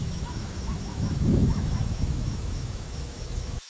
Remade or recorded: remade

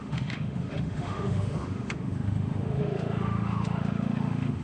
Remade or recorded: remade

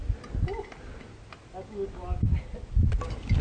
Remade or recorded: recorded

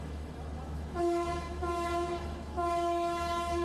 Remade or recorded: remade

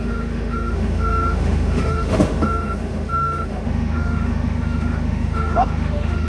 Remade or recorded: remade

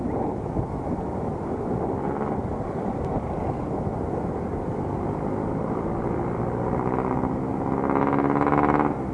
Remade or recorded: recorded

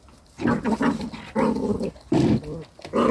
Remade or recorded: recorded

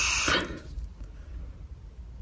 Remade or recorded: recorded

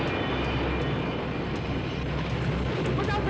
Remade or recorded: recorded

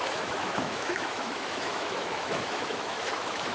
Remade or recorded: remade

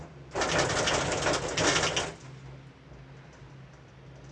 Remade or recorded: recorded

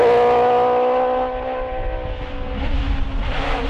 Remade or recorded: recorded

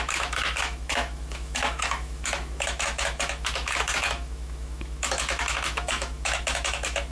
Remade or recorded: remade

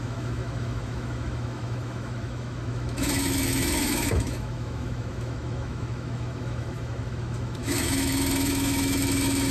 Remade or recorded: remade